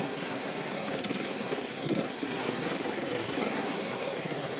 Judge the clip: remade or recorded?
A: remade